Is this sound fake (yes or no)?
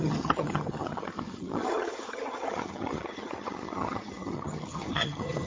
yes